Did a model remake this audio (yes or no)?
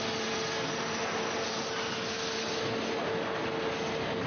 no